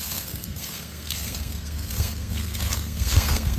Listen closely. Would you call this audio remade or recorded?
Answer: remade